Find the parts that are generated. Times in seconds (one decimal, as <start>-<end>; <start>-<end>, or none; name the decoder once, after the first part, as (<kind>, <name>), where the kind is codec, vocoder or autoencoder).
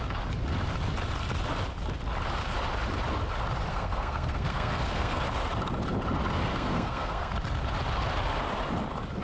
3.7-5.2 (codec, SNAC); 6.5-7.3